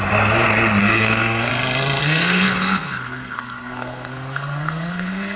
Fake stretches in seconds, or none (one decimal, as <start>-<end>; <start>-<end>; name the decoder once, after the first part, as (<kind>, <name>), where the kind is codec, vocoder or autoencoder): 0.8-1.5 (codec, SNAC); 2.0-5.4